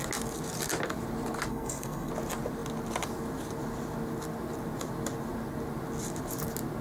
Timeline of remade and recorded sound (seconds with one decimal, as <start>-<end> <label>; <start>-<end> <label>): 0.0-1.5 recorded; 1.5-2.1 remade; 2.1-6.8 recorded